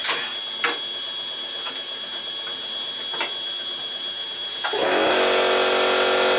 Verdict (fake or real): real